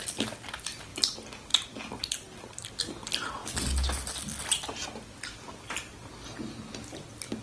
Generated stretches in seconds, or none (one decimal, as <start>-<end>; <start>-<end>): none